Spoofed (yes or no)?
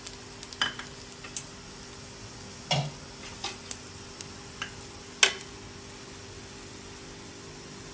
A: no